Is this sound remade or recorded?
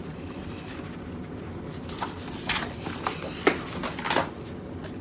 recorded